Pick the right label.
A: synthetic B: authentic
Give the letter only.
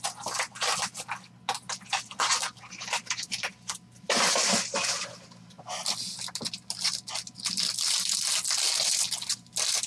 B